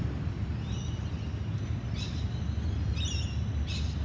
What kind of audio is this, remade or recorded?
recorded